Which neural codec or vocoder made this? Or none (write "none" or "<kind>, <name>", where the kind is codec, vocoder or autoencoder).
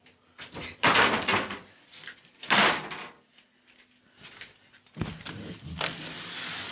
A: none